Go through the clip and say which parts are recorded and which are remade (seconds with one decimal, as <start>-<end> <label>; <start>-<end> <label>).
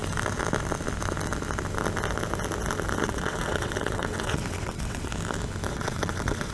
0.0-3.0 recorded; 3.0-5.1 remade; 5.1-5.7 recorded; 5.7-6.5 remade